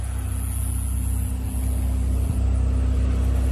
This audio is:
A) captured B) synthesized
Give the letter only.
A